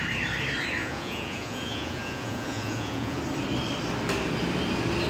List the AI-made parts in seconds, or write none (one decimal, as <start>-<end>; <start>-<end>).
0.8-3.2